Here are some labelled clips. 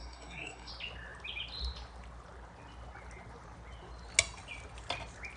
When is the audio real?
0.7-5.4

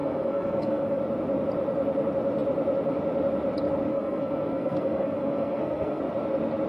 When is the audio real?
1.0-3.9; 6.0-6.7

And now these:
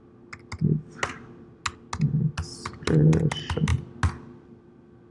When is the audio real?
0.0-5.1